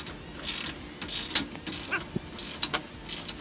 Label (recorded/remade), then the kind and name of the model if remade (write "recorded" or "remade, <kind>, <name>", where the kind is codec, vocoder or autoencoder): recorded